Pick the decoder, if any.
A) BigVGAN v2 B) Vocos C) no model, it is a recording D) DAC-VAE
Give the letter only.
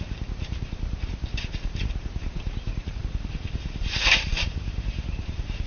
A